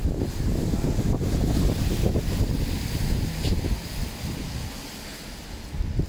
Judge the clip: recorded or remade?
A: recorded